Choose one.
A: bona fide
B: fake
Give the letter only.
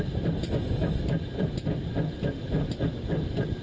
A